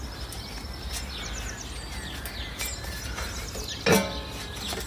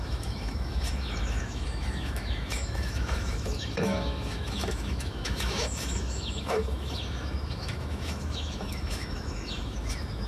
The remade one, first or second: second